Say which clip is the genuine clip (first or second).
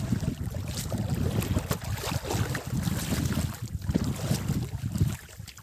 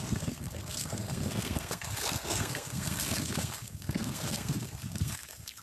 first